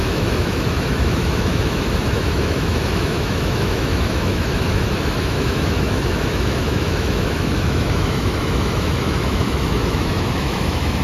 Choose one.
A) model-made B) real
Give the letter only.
A